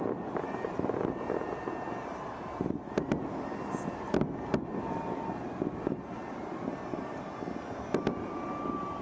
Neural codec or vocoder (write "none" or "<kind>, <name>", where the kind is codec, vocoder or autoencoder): none